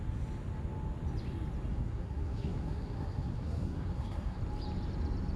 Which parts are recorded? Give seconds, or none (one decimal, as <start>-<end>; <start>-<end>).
0.0-1.7; 4.4-5.4